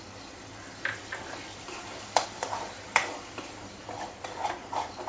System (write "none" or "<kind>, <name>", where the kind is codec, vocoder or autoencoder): none